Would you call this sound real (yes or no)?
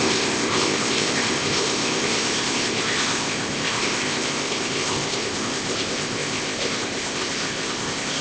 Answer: no